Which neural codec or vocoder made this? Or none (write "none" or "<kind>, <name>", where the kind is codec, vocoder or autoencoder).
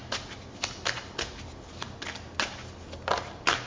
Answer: none